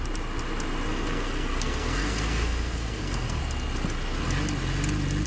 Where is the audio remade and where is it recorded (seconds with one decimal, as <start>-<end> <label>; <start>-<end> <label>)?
0.0-0.9 recorded; 0.9-3.4 remade; 3.4-5.3 recorded